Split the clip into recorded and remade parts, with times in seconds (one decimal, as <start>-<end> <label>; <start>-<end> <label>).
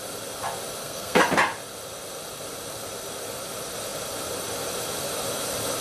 0.0-0.8 recorded; 0.8-1.3 remade; 1.3-5.8 recorded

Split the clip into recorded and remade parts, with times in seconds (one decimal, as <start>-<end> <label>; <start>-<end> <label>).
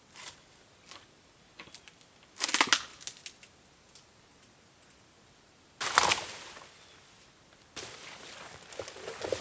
0.0-9.4 recorded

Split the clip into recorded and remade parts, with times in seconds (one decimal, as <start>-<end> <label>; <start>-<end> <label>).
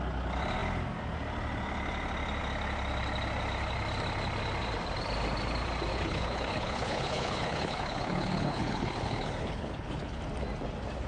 0.0-5.9 recorded; 5.9-10.2 remade; 10.2-11.1 recorded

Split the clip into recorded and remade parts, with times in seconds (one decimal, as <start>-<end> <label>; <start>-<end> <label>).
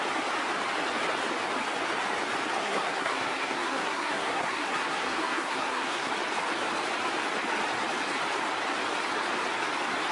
0.0-2.6 recorded; 2.6-6.1 remade; 6.1-10.1 recorded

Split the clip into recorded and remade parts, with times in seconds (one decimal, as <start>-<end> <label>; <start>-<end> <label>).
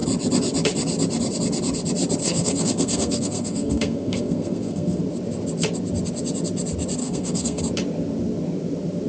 0.0-2.2 recorded; 2.2-5.0 remade; 5.0-7.0 recorded; 7.0-7.6 remade; 7.6-9.1 recorded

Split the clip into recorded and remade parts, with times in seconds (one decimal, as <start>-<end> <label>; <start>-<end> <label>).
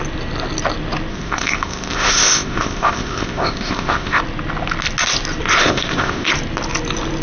0.0-1.1 recorded; 1.1-4.2 remade; 4.2-5.6 recorded; 5.6-6.3 remade; 6.3-7.2 recorded